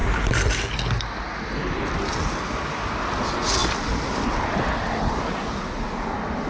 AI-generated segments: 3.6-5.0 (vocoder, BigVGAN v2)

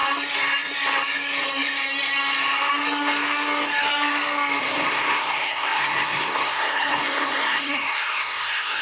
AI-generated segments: 4.6-8.8 (codec, SNAC)

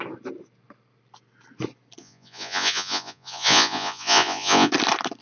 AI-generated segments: 2.0-4.7 (vocoder, Vocos)